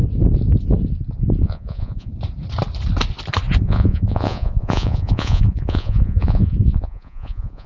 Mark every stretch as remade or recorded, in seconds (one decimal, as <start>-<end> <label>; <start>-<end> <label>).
0.0-1.4 recorded; 1.4-2.1 remade; 2.1-3.6 recorded; 3.6-7.7 remade